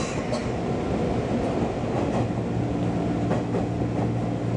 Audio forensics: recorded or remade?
recorded